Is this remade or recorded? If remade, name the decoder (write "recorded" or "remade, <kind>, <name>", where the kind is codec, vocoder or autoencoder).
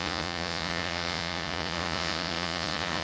remade, vocoder, Vocos